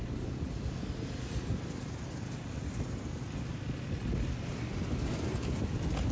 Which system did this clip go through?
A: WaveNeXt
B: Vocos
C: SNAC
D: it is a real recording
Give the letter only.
D